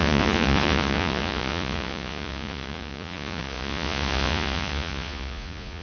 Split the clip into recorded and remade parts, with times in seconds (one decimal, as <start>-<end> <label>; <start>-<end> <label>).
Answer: 0.0-5.8 remade